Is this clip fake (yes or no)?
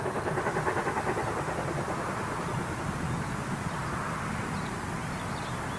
no